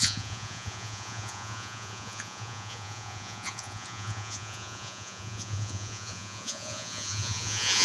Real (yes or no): no